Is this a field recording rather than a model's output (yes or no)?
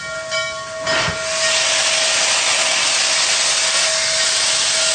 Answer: yes